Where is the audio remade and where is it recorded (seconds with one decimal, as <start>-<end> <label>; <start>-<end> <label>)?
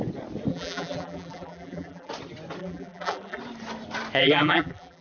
0.0-0.5 recorded; 0.5-2.1 remade; 2.1-2.6 recorded; 2.6-3.4 remade; 3.4-4.2 recorded; 4.2-5.0 remade